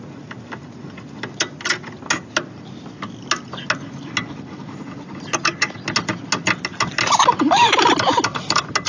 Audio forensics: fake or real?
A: real